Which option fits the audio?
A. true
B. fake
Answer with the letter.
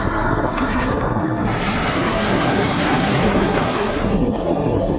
B